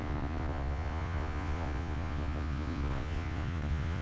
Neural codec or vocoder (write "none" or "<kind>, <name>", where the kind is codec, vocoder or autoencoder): vocoder, Vocos